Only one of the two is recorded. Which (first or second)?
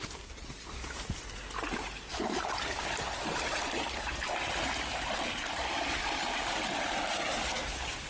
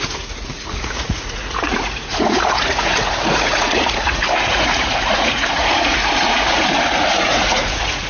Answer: first